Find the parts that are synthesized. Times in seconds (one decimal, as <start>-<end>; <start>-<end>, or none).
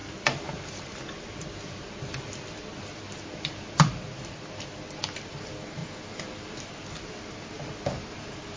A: 0.0-5.8; 6.7-8.6